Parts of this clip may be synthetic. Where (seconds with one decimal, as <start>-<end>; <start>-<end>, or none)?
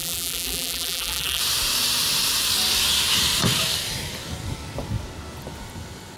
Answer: 0.0-1.4